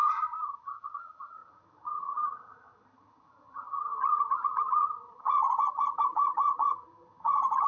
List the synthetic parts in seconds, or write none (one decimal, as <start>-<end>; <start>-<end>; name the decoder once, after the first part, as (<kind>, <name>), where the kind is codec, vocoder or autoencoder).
0.0-7.7 (vocoder, HiFi-GAN)